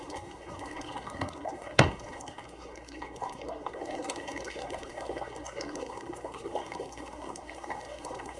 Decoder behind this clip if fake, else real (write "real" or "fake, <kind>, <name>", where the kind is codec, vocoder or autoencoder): fake, codec, SNAC